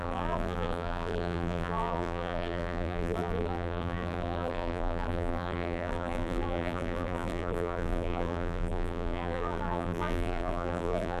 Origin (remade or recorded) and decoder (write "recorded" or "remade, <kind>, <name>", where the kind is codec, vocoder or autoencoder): remade, vocoder, BigVGAN v2